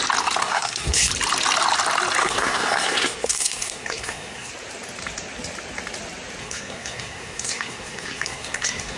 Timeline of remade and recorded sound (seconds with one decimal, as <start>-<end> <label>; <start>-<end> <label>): 0.0-0.4 recorded; 0.4-1.1 remade; 1.1-2.2 recorded; 2.2-4.5 remade; 4.5-6.4 recorded; 6.4-9.0 remade